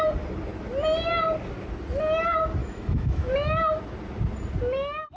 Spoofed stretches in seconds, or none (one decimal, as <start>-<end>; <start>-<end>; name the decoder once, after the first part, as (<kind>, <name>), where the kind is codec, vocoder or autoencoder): 2.6-3.3 (autoencoder, DAC-VAE)